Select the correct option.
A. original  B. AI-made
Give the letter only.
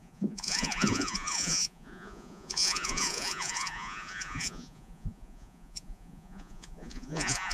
B